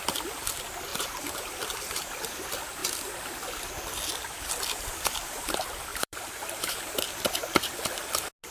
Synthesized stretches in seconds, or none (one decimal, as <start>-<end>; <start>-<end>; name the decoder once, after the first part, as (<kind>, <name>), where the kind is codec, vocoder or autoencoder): 0.9-2.1 (vocoder, BigVGAN v2); 5.9-7.0